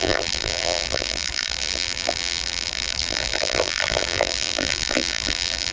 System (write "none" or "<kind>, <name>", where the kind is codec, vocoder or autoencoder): vocoder, BigVGAN v2